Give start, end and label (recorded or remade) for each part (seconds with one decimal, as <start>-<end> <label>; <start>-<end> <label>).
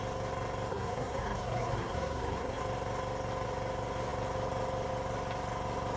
0.0-0.7 recorded; 0.7-2.6 remade; 2.6-6.0 recorded